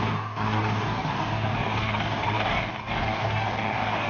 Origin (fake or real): fake